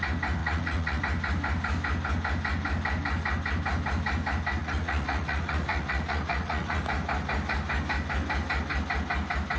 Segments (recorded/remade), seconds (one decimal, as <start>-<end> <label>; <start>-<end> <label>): 0.0-0.4 recorded; 0.4-1.0 remade; 1.0-4.6 recorded; 4.6-6.8 remade; 6.8-9.6 recorded